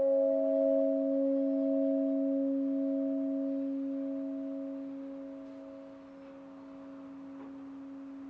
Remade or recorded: recorded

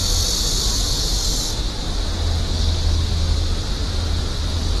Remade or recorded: recorded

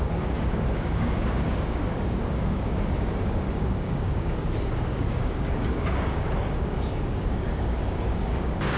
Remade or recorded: remade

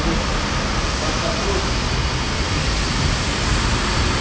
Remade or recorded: recorded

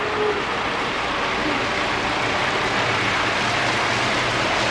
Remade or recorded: recorded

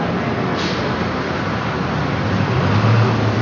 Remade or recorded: recorded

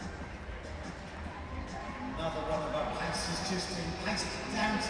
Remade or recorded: recorded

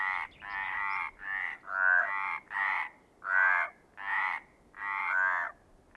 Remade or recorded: recorded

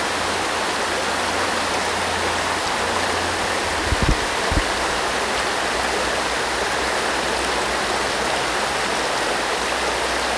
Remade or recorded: recorded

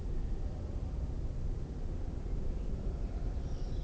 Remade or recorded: remade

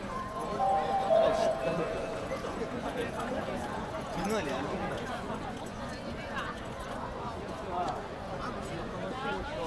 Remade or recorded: remade